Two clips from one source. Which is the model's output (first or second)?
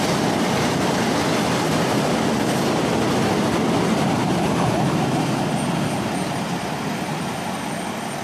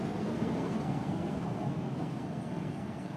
second